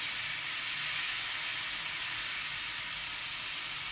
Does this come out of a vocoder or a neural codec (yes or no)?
no